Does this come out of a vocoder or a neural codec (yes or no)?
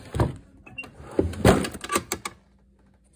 no